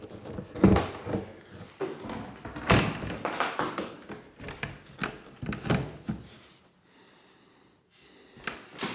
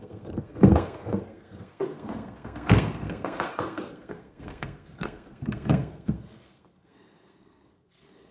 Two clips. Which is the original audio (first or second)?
first